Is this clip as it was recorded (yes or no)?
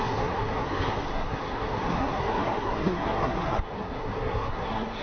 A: no